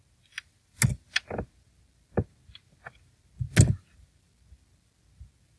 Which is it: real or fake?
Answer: real